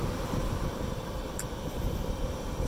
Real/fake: fake